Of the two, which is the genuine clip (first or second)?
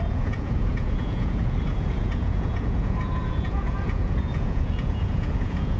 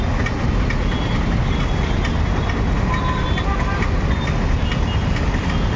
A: second